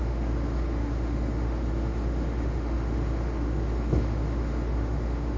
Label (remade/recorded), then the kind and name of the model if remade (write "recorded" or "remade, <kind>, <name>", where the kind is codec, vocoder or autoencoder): remade, autoencoder, DAC-VAE